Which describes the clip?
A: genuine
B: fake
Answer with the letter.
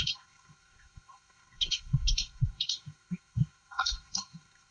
B